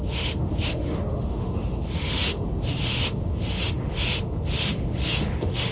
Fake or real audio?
fake